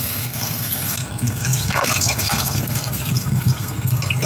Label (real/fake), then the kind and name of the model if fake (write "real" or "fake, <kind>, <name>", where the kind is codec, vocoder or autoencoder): fake, codec, SNAC